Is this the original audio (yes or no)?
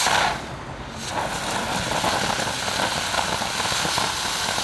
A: yes